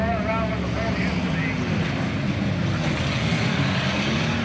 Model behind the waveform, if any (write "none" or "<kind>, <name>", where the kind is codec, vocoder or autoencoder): none